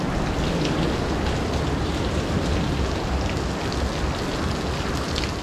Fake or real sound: real